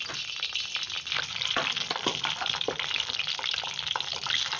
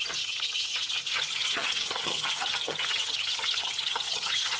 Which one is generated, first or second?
second